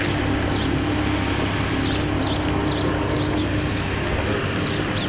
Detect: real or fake real